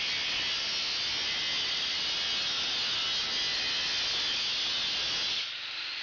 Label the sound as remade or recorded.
recorded